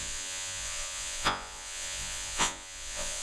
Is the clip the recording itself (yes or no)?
no